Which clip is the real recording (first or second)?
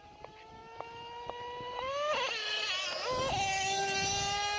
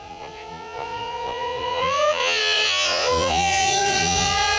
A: first